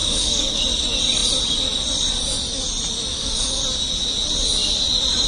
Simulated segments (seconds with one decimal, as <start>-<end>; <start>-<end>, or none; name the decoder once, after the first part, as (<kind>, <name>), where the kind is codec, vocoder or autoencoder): 0.0-0.6 (codec, DAC); 3.1-3.6